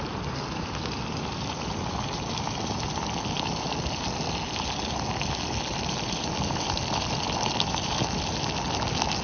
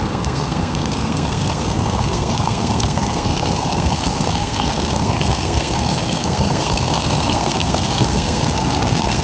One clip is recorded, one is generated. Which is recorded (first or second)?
first